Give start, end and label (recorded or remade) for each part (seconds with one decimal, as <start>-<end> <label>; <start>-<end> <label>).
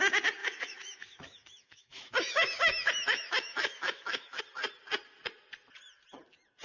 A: 0.0-0.4 recorded; 0.4-4.4 remade; 4.4-6.6 recorded